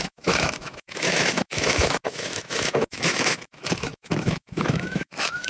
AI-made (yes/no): yes